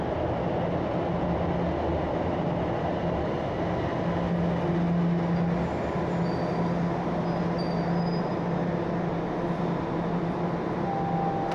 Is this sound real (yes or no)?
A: yes